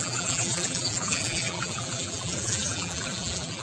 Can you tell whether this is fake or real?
fake